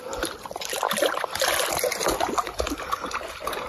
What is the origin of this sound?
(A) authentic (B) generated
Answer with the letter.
A